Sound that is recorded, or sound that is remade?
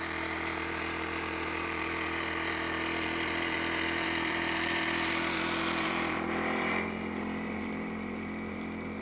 remade